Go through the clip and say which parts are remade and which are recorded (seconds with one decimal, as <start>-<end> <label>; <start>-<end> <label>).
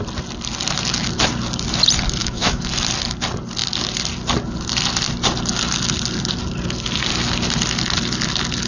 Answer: 0.0-2.2 recorded; 2.2-2.7 remade; 2.7-8.7 recorded